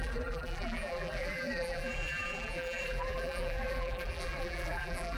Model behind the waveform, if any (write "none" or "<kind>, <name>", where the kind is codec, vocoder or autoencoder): vocoder, BigVGAN v2